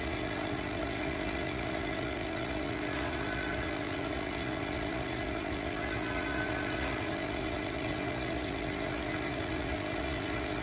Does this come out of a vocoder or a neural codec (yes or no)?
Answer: yes